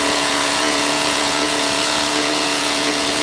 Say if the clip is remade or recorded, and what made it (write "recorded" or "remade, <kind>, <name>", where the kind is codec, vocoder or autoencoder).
remade, vocoder, Vocos